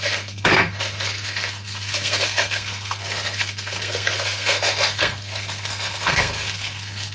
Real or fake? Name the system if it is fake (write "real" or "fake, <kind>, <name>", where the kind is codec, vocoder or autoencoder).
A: fake, codec, SNAC